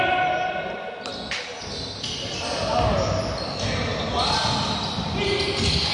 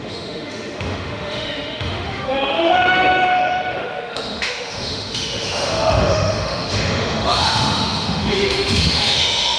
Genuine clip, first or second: first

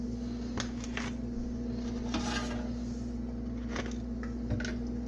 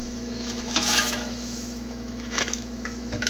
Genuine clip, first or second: first